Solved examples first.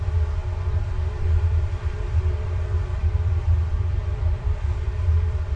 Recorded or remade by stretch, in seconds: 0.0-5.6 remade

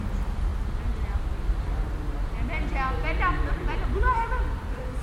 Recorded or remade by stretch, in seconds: 0.0-0.5 remade; 0.5-3.5 recorded; 3.5-5.0 remade

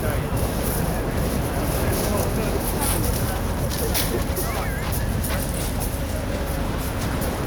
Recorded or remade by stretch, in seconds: 0.0-2.1 remade; 2.1-3.7 recorded; 3.7-7.5 remade

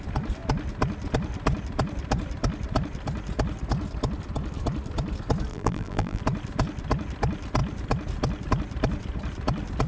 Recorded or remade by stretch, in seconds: 0.0-5.5 recorded; 5.5-6.2 remade; 6.2-9.9 recorded

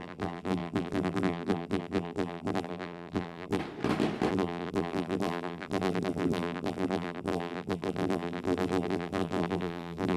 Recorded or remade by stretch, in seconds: 0.0-3.6 remade; 3.6-4.3 recorded; 4.3-10.2 remade

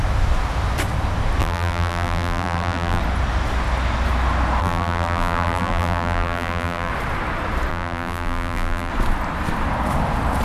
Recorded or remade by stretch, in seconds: 0.0-1.4 recorded; 1.4-3.0 remade; 3.0-4.6 recorded; 4.6-6.9 remade; 6.9-7.7 recorded; 7.7-8.9 remade; 8.9-10.4 recorded